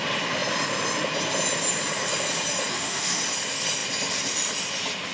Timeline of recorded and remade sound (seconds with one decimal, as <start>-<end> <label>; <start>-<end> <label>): 0.0-2.7 recorded; 2.7-3.2 remade; 3.2-5.1 recorded

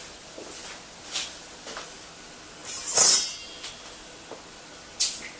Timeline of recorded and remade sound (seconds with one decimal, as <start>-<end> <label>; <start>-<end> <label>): 0.0-5.4 recorded

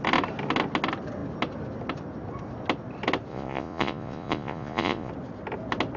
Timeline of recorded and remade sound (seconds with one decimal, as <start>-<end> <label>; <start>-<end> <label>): 0.0-3.3 recorded; 3.3-5.1 remade; 5.1-6.0 recorded